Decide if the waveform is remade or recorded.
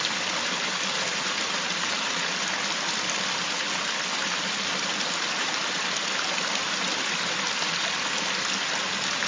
recorded